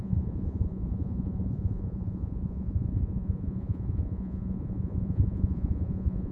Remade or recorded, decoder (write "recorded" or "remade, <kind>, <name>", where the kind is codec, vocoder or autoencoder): remade, vocoder, Vocos